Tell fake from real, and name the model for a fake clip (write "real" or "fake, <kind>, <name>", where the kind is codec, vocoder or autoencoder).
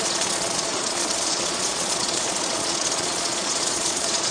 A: fake, vocoder, Vocos